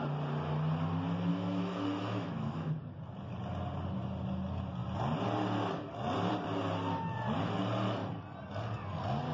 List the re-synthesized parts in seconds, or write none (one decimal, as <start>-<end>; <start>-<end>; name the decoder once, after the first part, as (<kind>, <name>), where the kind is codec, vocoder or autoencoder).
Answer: 1.3-2.7 (autoencoder, DAC-VAE)